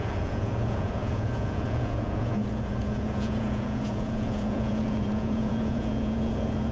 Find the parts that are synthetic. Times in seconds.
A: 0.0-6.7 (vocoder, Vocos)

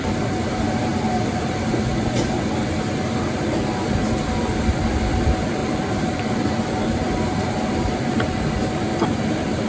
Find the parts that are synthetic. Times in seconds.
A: 0.9-1.6 (vocoder, BigVGAN v2); 5.6-8.4

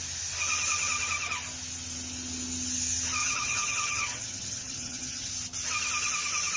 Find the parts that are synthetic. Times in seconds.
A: 3.2-5.3 (vocoder, HiFi-GAN)